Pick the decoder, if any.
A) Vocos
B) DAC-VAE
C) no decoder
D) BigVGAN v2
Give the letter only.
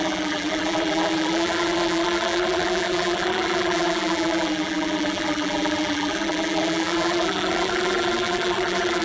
D